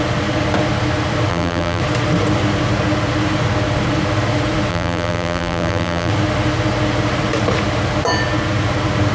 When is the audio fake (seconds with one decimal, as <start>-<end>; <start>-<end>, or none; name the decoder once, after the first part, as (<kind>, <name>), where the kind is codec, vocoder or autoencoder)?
1.3-1.8 (vocoder, BigVGAN v2); 4.7-6.1